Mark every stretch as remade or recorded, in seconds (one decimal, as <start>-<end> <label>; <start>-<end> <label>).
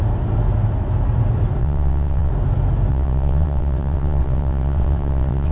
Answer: 0.0-1.6 recorded; 1.6-2.3 remade; 2.3-2.9 recorded; 2.9-5.5 remade